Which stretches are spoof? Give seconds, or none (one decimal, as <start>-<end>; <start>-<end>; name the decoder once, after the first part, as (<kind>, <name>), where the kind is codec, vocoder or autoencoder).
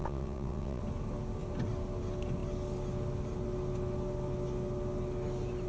0.0-0.8 (vocoder, WaveNeXt)